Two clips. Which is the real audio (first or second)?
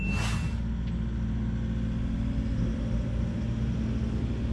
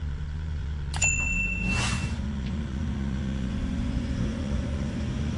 first